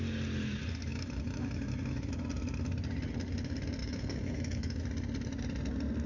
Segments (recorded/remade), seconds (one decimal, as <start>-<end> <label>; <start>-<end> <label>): 0.0-0.9 recorded; 0.9-2.1 remade; 2.1-3.8 recorded; 3.8-4.8 remade; 4.8-6.1 recorded